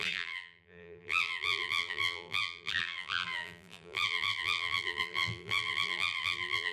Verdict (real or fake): fake